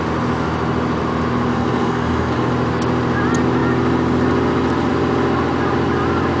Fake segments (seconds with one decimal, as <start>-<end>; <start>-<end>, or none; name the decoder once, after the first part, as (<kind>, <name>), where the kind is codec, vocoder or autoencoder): 1.5-2.5 (codec, SNAC)